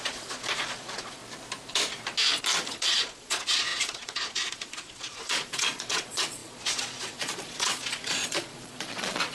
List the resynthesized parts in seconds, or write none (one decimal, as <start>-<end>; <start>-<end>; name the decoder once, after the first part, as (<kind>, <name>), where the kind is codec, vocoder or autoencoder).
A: 0.0-1.2 (vocoder, Vocos); 2.7-9.3